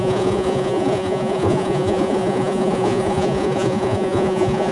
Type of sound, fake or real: fake